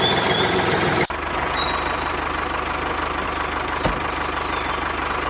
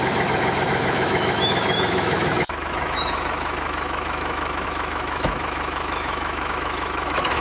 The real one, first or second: first